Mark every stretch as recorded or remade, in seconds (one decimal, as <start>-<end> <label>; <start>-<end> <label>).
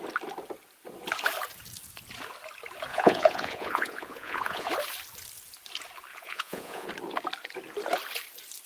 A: 0.0-2.9 recorded; 2.9-4.7 remade; 4.7-6.1 recorded; 6.1-6.9 remade; 6.9-8.7 recorded